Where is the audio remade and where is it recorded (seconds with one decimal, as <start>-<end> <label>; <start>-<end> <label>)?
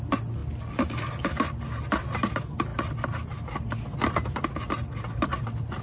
0.0-5.8 recorded